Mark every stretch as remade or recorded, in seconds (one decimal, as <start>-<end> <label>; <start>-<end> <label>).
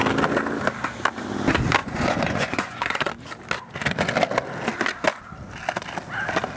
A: 0.0-1.8 recorded; 1.8-3.1 remade; 3.1-6.6 recorded